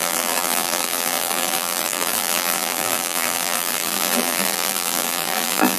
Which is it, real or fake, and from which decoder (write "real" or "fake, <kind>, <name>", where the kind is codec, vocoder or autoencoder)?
fake, vocoder, BigVGAN v2